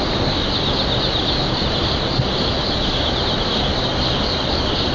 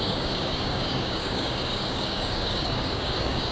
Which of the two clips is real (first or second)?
first